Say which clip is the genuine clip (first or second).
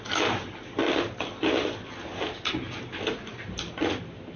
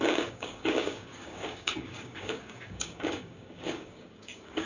first